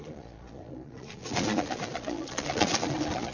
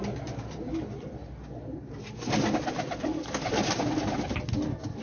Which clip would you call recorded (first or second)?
second